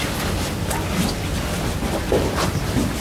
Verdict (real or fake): real